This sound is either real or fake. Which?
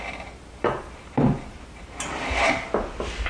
real